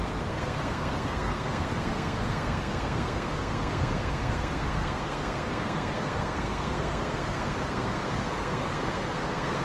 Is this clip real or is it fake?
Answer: fake